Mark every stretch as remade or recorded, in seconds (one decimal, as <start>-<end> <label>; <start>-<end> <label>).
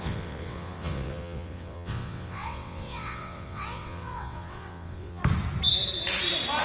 0.0-5.2 remade; 5.2-6.6 recorded